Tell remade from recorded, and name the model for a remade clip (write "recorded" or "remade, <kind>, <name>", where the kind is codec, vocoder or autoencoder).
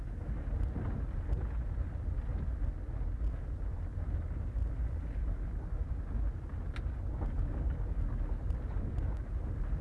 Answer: recorded